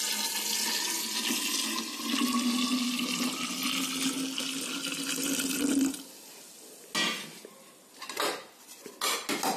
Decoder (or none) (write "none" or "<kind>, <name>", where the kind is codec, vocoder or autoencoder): none